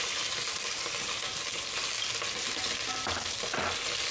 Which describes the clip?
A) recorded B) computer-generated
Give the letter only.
A